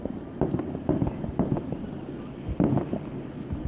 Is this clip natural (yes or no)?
yes